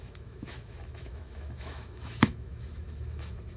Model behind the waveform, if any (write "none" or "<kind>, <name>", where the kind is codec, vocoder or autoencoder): autoencoder, DAC-VAE